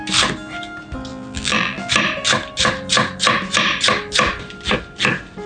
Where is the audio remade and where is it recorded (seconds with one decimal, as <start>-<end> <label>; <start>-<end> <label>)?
0.0-1.1 recorded; 1.1-1.9 remade; 1.9-5.5 recorded